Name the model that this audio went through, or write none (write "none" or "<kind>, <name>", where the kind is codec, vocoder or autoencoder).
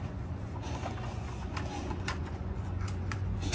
vocoder, Vocos